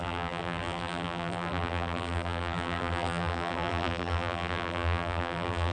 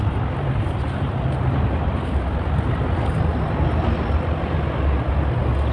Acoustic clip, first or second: second